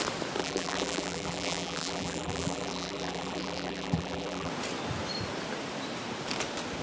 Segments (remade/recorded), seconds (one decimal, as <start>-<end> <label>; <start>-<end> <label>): 0.0-0.4 recorded; 0.4-4.5 remade; 4.5-6.8 recorded